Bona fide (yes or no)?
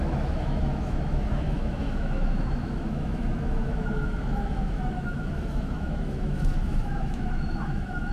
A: no